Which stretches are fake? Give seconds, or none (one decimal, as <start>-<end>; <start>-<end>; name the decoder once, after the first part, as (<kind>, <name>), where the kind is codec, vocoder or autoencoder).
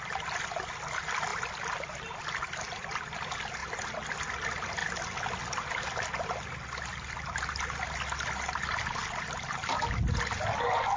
none